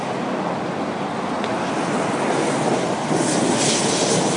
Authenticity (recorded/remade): recorded